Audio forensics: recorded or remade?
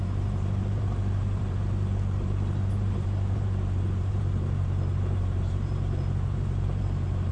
remade